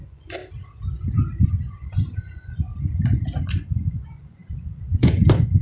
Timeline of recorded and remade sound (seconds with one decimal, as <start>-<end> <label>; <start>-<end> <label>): 0.0-0.4 remade; 0.4-1.5 recorded; 1.5-2.7 remade; 2.7-3.4 recorded; 3.4-5.6 remade